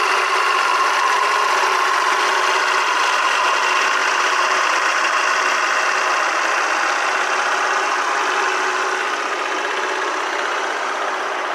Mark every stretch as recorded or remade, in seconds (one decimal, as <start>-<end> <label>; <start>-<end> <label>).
0.0-4.0 recorded; 4.0-5.2 remade; 5.2-11.5 recorded